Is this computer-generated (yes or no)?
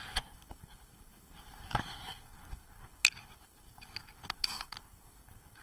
yes